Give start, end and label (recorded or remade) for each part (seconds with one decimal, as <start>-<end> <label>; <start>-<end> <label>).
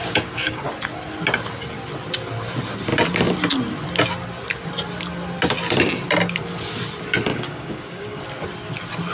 0.0-0.7 remade; 0.7-7.3 recorded; 7.3-8.2 remade; 8.2-9.1 recorded